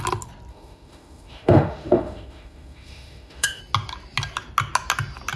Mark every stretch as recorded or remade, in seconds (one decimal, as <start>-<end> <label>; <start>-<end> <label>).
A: 0.0-0.5 recorded; 0.5-3.6 remade; 3.6-5.4 recorded